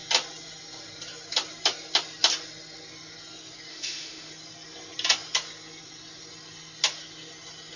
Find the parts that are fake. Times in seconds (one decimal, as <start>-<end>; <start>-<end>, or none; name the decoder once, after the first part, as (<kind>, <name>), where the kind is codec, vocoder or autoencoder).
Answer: 3.7-4.3 (autoencoder, DAC-VAE)

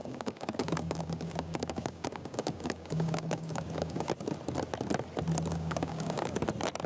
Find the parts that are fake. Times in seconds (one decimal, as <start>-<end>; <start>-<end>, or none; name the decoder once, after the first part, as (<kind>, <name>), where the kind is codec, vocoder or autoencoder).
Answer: 0.0-4.1 (codec, DAC); 5.5-6.4

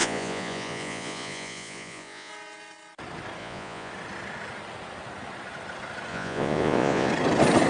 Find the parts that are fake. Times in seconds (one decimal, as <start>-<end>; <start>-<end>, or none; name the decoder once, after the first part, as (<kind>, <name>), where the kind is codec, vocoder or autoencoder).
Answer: 0.0-2.3 (vocoder, Vocos); 3.4-3.9; 6.1-7.1

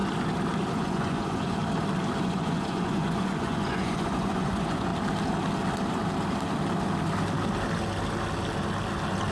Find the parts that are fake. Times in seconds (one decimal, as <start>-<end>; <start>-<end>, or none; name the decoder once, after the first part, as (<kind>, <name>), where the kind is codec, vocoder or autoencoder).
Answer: 0.7-1.6 (vocoder, Vocos); 2.2-4.9

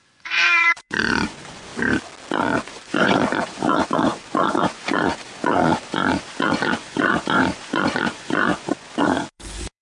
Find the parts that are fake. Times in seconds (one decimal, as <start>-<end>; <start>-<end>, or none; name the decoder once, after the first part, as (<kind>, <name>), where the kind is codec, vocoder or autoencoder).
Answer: 0.0-1.7 (vocoder, Vocos); 2.3-9.8